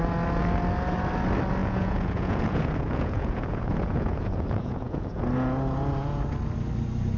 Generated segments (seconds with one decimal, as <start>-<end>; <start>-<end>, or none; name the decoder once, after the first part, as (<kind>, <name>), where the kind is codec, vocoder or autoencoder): 1.6-5.2 (vocoder, Vocos)